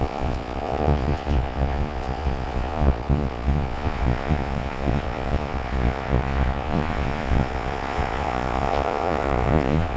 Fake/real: fake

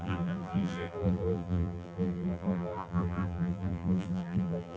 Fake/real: fake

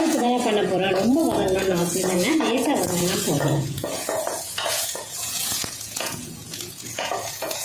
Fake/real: fake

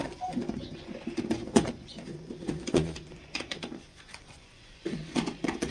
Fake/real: fake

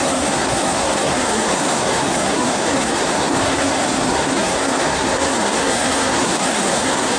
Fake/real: fake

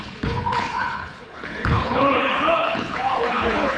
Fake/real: fake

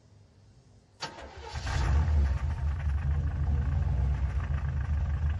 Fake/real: real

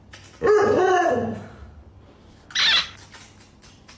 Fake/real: real